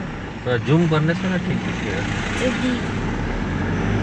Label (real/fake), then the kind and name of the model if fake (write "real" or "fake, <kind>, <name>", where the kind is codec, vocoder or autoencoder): real